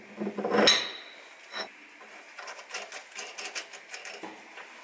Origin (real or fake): real